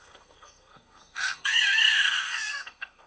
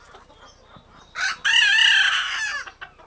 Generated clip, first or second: first